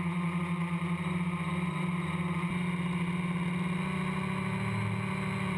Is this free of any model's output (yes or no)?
yes